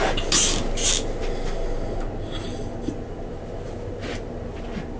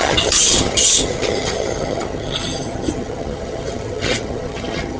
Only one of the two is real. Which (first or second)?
first